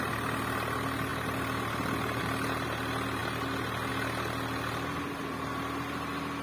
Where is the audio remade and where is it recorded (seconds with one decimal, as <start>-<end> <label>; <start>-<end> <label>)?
0.0-6.4 recorded